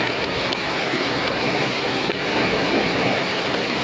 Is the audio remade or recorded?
remade